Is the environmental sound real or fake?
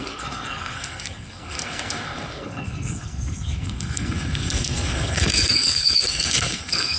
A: fake